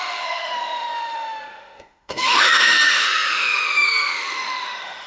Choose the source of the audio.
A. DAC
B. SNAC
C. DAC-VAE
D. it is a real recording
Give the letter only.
C